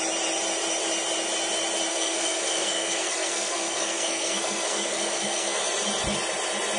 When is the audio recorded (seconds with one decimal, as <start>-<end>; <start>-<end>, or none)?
0.0-1.9; 5.6-6.8